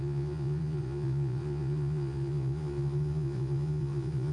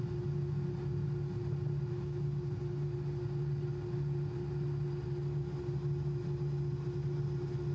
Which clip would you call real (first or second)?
second